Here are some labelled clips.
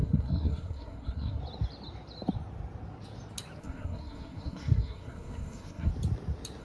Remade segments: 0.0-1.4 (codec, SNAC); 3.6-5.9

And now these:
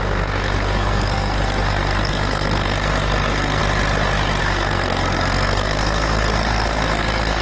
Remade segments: 0.0-3.6 (codec, SNAC); 4.4-7.4

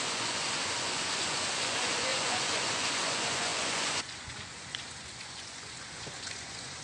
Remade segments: 0.0-6.8 (vocoder, Vocos)

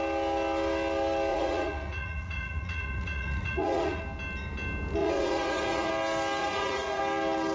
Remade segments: 1.3-4.0 (vocoder, Vocos); 5.0-5.9; 6.4-7.0

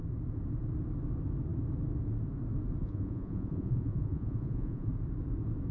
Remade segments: 2.8-4.9 (vocoder, Vocos)

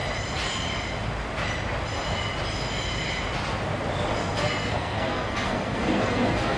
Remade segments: 4.2-6.6 (codec, SNAC)